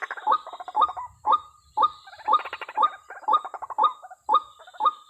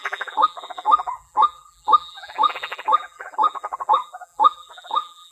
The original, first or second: first